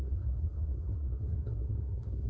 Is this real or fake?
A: fake